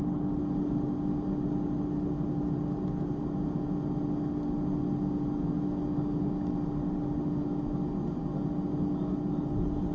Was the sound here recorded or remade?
recorded